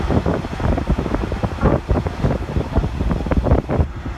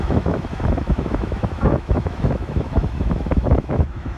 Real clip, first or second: first